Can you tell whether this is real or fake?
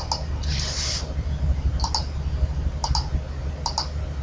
real